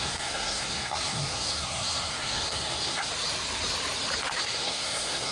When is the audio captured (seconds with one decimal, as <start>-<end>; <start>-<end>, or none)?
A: 3.1-4.4